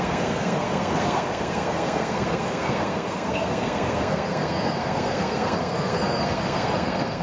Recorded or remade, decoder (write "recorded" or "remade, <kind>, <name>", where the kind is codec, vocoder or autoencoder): remade, codec, SNAC